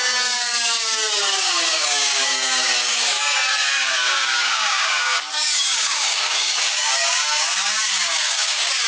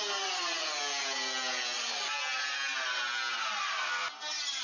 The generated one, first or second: first